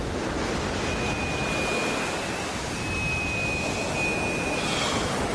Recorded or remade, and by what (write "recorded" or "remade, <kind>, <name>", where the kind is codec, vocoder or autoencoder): recorded